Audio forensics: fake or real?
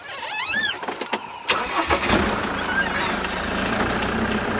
real